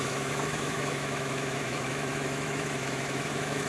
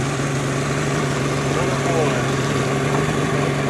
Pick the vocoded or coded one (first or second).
first